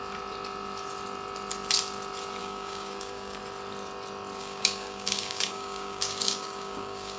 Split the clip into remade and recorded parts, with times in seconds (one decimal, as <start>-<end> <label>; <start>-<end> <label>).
0.0-2.4 recorded; 2.4-3.4 remade; 3.4-4.4 recorded; 4.4-7.2 remade